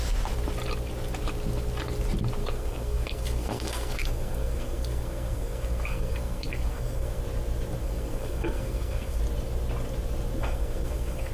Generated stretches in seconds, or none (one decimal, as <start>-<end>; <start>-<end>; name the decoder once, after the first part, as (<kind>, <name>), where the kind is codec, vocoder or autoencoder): 2.4-7.2 (codec, SNAC); 7.8-9.2; 10.4-11.3